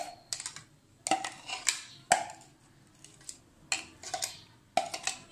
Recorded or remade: recorded